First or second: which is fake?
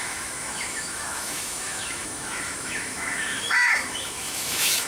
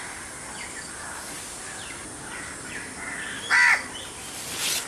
first